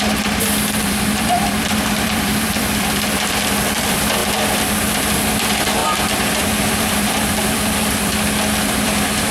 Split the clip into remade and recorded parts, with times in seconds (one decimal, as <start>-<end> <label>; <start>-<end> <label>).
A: 0.0-4.2 remade; 4.2-5.3 recorded; 5.3-9.3 remade